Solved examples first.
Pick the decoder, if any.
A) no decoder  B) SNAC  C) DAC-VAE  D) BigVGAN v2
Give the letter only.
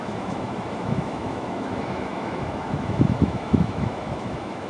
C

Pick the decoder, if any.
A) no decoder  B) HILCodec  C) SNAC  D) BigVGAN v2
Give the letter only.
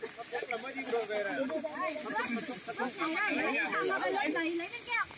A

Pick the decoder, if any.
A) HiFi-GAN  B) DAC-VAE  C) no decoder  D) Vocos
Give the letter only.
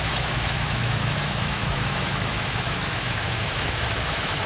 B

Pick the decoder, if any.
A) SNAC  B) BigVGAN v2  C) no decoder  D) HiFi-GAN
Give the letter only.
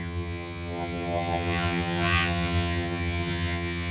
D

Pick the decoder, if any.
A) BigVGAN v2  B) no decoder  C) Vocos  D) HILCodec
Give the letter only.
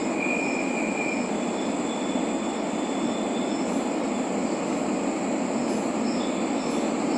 B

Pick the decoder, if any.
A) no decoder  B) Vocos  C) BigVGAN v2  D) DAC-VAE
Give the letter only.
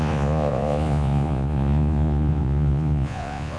B